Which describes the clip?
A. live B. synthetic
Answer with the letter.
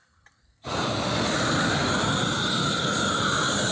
A